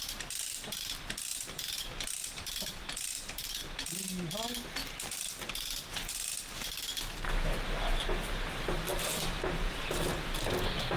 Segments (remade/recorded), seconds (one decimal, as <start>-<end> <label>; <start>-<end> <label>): 0.0-1.3 recorded; 1.3-3.6 remade; 3.6-8.9 recorded; 8.9-10.1 remade; 10.1-11.0 recorded